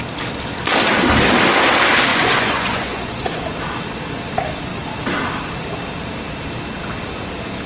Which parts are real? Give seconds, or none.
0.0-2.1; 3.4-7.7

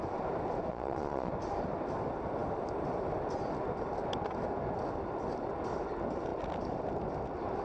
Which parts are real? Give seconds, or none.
0.0-0.7; 1.3-7.6

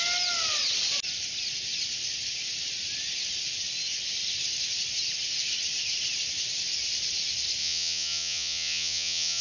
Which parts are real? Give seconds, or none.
0.0-7.6